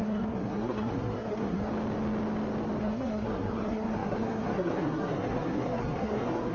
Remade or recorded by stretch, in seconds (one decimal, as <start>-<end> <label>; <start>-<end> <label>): 0.0-1.7 remade; 1.7-2.8 recorded; 2.8-6.5 remade

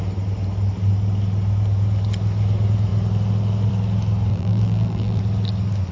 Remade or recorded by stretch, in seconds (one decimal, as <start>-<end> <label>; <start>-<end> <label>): 0.0-4.3 recorded; 4.3-5.2 remade; 5.2-5.9 recorded